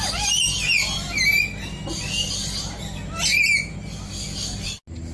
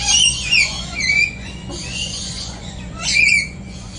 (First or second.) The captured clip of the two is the first